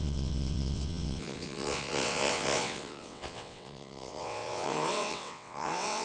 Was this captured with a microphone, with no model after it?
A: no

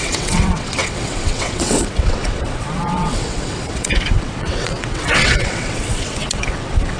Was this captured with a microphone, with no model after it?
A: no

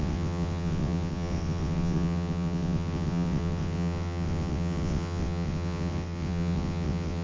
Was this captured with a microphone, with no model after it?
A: no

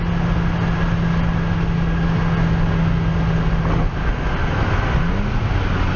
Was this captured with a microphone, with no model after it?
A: yes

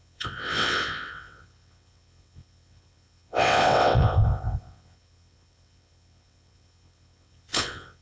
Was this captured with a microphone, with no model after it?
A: no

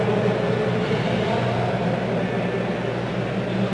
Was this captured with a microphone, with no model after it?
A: yes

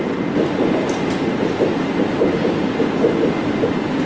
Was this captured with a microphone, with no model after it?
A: yes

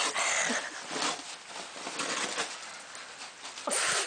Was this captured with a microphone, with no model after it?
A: yes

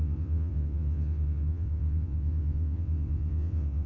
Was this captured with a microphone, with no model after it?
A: no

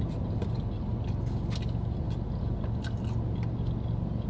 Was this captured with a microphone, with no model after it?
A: yes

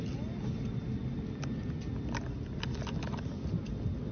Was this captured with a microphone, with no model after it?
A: yes